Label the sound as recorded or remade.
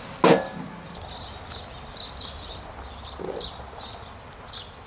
recorded